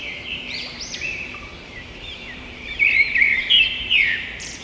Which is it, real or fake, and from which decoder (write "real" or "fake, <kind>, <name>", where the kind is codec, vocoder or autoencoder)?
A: fake, vocoder, BigVGAN v2